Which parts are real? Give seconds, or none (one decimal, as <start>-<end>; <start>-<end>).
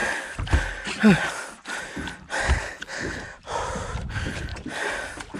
0.0-2.5; 3.2-4.1; 4.5-5.4